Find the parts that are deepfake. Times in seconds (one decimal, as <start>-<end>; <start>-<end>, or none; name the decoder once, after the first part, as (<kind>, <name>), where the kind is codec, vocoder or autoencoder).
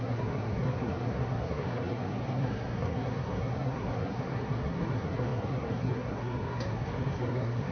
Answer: 0.0-7.7 (codec, SNAC)